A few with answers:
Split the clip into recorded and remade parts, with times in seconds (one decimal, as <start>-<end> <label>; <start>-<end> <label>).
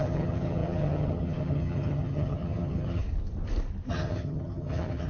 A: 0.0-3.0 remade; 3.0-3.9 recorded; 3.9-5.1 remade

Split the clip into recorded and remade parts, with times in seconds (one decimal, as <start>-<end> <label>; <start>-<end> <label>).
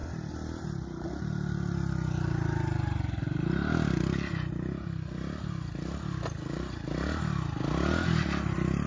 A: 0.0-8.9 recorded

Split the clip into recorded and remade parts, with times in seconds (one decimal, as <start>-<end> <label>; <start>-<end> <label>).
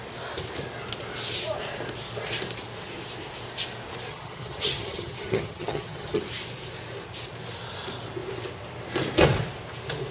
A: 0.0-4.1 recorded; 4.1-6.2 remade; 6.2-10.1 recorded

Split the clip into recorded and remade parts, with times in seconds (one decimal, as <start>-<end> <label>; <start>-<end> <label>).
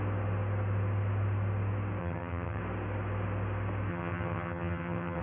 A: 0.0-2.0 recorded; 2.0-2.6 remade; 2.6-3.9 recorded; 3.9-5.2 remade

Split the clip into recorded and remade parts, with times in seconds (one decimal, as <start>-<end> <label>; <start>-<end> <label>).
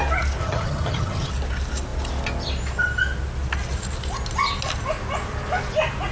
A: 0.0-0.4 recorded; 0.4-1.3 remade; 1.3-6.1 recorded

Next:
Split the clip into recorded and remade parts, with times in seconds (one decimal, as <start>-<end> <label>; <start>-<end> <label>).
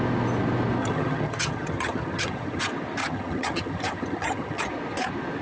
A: 0.0-0.8 recorded; 0.8-2.6 remade; 2.6-3.0 recorded; 3.0-4.7 remade; 4.7-5.4 recorded